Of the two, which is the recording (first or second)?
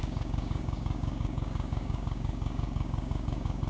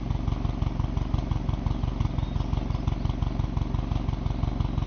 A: second